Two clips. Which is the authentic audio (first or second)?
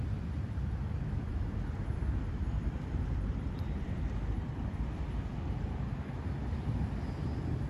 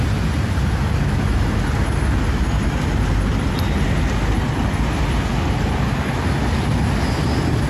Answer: second